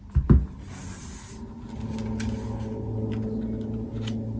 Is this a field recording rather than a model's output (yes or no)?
yes